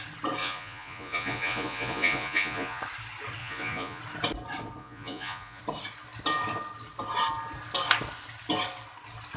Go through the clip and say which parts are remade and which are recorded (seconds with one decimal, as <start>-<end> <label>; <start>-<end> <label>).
0.0-0.4 recorded; 0.4-2.8 remade; 2.8-3.4 recorded; 3.4-4.0 remade; 4.0-4.8 recorded; 4.8-5.6 remade; 5.6-9.4 recorded